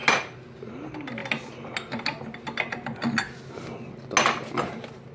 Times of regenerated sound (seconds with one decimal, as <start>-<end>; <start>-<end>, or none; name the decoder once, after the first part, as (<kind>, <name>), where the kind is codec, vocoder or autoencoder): none